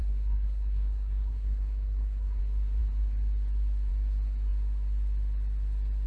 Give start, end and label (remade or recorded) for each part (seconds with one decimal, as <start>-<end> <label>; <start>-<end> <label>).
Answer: 0.0-2.4 remade; 2.4-6.1 recorded